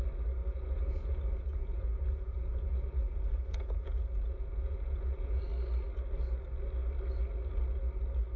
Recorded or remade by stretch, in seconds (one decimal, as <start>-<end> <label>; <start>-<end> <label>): 0.0-0.4 recorded; 0.4-5.4 remade; 5.4-8.4 recorded